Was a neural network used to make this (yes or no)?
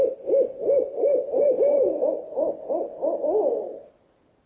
no